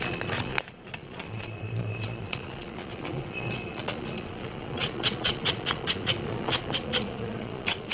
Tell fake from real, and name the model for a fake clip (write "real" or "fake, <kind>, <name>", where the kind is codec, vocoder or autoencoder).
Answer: fake, vocoder, Vocos